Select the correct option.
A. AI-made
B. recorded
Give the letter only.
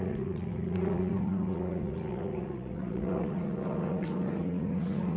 A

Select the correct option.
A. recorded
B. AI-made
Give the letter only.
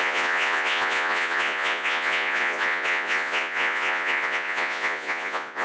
B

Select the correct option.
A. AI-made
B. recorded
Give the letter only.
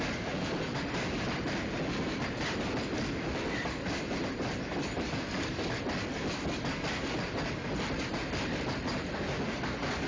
B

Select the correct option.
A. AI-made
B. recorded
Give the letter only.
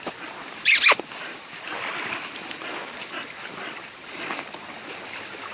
B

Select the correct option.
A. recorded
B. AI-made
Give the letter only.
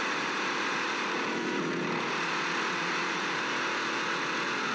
B